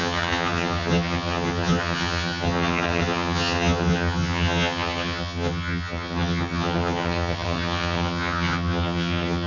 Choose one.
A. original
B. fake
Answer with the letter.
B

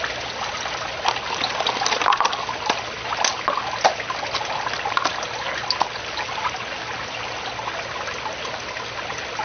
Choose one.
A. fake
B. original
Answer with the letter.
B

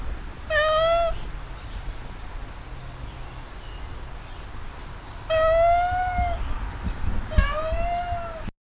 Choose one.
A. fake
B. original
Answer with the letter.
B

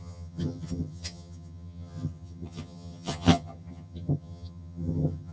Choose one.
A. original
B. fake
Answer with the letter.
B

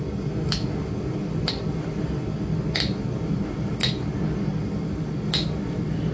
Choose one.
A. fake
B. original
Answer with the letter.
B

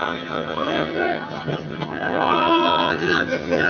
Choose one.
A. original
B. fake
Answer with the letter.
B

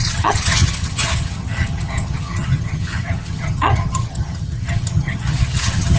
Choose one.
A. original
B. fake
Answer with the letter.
B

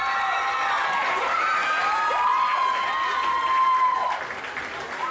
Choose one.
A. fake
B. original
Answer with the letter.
B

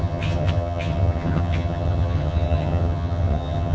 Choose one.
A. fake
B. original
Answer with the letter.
A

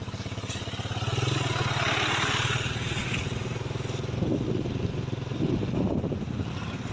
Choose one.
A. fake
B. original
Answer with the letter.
B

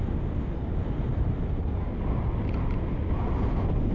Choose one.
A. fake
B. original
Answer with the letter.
B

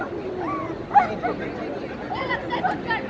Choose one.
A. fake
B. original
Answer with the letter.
B